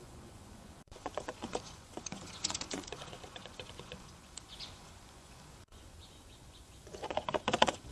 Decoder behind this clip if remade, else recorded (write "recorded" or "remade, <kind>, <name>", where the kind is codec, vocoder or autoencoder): remade, vocoder, Vocos